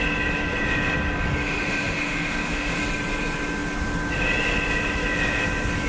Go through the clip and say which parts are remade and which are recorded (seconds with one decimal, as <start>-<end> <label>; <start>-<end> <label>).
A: 0.0-1.4 recorded; 1.4-2.8 remade; 2.8-5.9 recorded